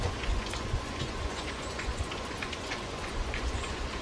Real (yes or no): no